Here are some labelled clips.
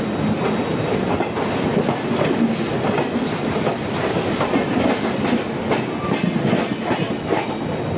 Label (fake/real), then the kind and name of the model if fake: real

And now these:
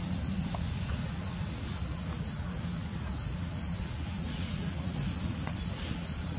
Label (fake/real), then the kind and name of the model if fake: fake, vocoder, Vocos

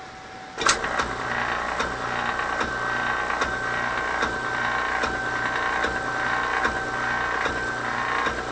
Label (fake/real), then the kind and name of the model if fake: real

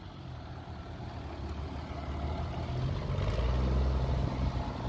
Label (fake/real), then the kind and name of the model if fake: real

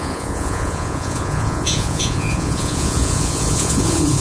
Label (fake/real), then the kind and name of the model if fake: fake, vocoder, Vocos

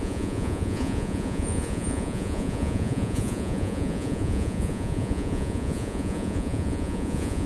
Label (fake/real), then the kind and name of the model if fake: fake, vocoder, Vocos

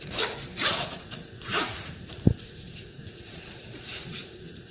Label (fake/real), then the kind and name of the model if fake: fake, vocoder, Vocos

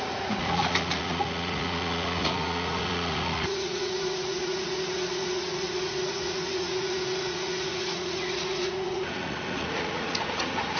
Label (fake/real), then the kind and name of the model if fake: fake, vocoder, Vocos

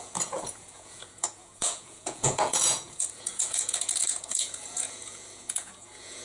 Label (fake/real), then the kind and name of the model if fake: fake, vocoder, Vocos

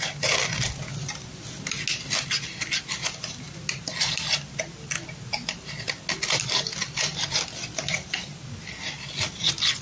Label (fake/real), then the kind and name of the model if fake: real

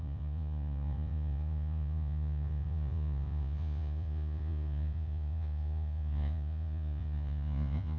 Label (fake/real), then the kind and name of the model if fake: fake, vocoder, Vocos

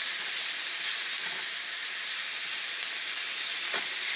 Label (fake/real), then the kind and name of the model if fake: real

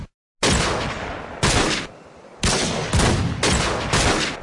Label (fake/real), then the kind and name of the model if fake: real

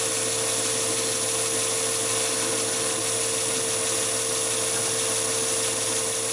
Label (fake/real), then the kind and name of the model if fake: real